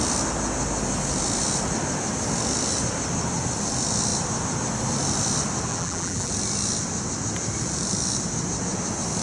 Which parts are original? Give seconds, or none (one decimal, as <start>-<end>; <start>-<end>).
0.0-5.7; 6.3-9.2